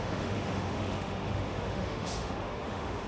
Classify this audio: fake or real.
fake